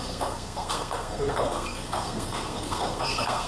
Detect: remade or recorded remade